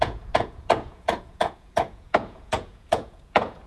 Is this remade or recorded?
remade